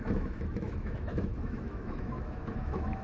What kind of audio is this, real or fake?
fake